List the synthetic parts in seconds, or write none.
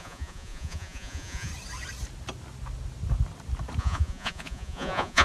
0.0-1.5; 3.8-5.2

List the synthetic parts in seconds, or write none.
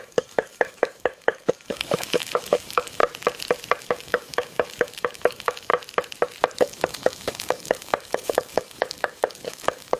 0.0-3.0; 3.8-5.7; 6.6-10.0